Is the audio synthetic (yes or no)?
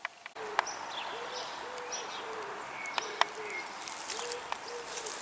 no